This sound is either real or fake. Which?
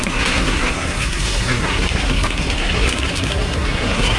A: fake